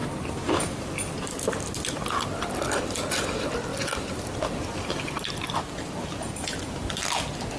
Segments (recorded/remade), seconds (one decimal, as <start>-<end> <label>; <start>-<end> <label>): 0.0-2.8 remade; 2.8-3.7 recorded; 3.7-6.7 remade; 6.7-7.6 recorded